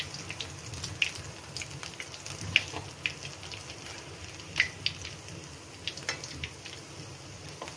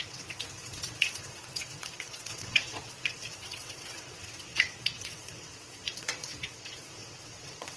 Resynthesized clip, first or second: second